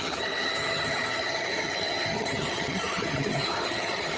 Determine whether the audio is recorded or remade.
remade